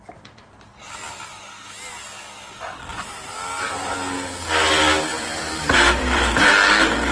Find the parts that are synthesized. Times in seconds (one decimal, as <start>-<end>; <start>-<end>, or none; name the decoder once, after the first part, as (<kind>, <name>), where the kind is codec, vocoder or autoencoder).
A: 2.9-3.7 (vocoder, BigVGAN v2); 5.1-6.5

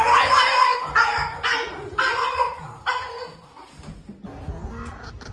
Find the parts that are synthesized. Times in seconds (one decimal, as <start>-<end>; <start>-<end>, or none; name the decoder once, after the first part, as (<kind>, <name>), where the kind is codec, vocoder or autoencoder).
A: none

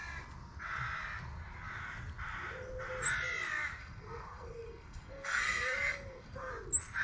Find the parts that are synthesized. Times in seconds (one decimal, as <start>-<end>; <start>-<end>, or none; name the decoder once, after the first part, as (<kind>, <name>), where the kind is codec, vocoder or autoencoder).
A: 3.8-6.5 (codec, SNAC)

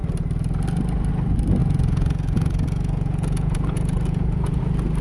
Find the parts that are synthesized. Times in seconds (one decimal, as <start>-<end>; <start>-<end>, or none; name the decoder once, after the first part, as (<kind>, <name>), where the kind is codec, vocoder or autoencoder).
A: 1.6-4.6 (vocoder, Vocos)

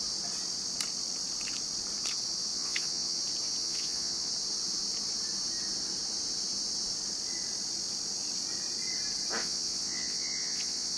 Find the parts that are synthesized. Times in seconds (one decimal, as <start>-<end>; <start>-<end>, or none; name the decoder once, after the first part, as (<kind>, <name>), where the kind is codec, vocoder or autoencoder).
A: 2.5-3.2 (vocoder, Vocos); 3.6-4.3; 9.4-11.0

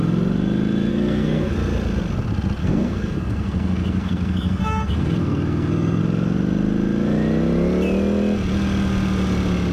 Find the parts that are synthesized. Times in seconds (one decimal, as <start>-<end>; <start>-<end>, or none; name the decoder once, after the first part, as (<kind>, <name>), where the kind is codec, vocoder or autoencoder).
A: 0.9-1.5 (codec, SNAC); 2.6-6.0

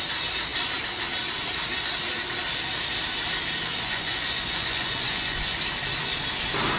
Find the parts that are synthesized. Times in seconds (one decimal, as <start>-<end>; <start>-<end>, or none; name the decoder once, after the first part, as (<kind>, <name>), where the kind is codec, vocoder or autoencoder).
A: 3.7-5.6 (vocoder, Vocos)

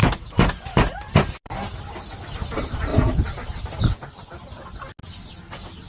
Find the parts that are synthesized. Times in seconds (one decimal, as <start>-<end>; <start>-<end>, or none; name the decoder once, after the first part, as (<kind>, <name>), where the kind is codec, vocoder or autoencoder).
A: none